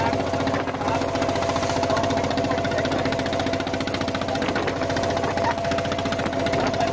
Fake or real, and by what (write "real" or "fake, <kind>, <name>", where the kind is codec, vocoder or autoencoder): real